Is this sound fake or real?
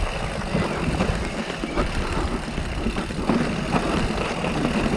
real